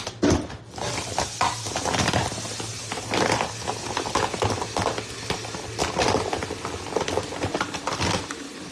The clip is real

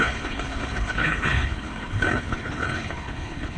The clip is fake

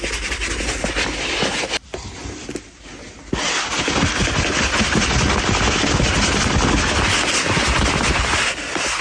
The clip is real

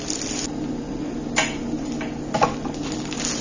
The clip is real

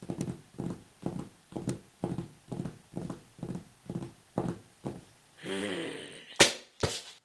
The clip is real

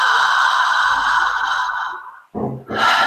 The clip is real